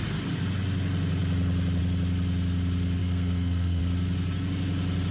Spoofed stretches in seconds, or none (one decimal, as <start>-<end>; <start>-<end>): 3.0-3.8